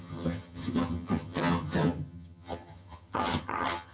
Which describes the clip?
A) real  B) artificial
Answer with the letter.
B